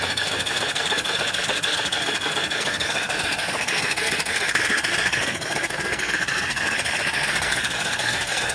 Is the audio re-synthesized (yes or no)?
yes